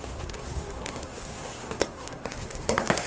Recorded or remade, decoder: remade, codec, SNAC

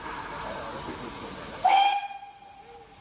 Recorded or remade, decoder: recorded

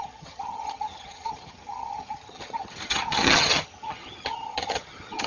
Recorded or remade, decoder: remade, vocoder, HiFi-GAN